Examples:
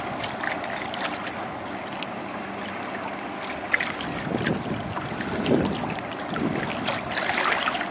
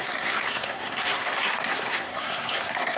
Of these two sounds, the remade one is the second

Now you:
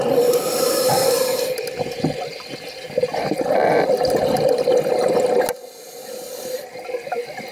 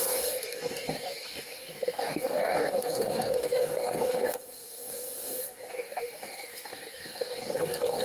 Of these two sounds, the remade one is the second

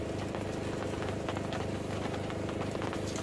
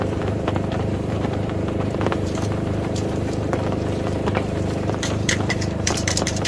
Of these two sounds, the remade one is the second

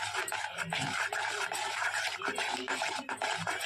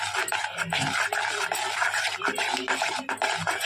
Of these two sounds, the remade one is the first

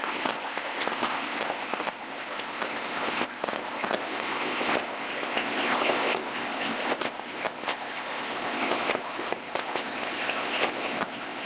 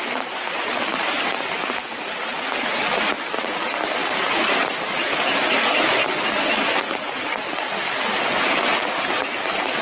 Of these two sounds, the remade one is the first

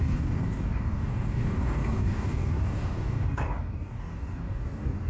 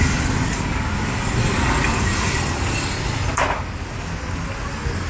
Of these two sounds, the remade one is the first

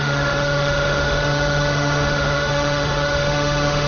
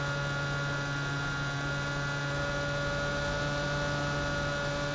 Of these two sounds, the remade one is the first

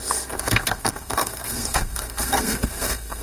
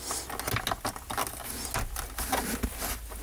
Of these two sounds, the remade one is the first